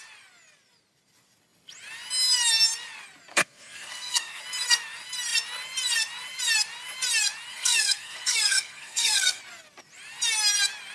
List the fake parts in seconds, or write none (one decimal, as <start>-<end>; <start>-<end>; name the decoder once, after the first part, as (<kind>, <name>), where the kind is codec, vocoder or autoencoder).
3.3-4.4 (codec, SNAC); 7.5-9.4